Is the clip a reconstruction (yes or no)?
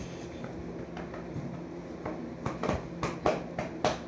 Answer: no